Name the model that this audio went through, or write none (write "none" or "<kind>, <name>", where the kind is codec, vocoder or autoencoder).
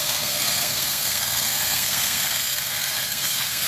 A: codec, SNAC